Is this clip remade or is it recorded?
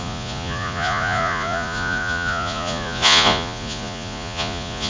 remade